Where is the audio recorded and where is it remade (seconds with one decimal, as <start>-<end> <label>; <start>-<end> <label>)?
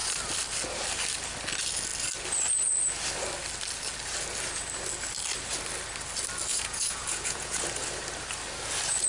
0.0-6.5 recorded; 6.5-7.6 remade; 7.6-9.1 recorded